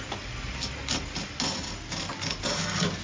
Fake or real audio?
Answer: real